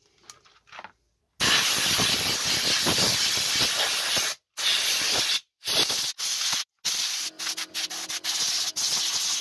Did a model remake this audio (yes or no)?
no